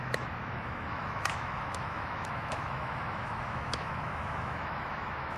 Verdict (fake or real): fake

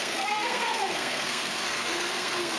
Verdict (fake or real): fake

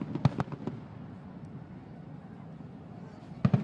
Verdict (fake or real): real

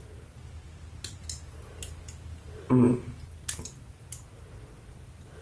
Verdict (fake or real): real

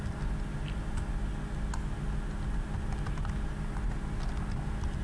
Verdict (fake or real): real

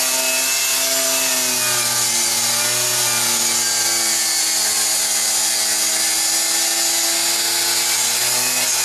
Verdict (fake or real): real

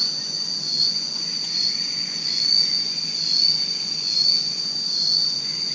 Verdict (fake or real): fake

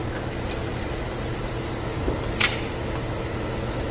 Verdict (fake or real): real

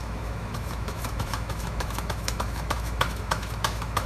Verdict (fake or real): fake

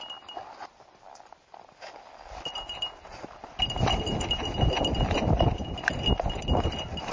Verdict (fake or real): real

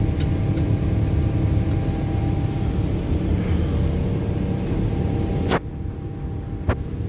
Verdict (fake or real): real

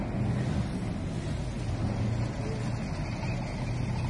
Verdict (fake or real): real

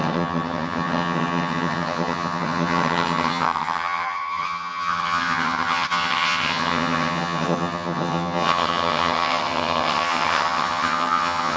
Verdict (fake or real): fake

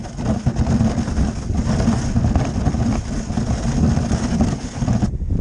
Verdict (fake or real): real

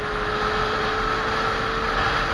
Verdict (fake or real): real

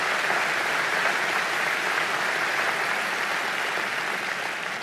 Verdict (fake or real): real